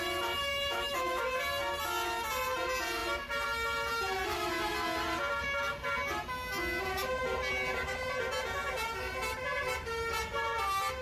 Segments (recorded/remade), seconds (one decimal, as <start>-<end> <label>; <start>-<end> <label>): 0.0-0.5 recorded; 0.5-1.2 remade; 1.2-11.0 recorded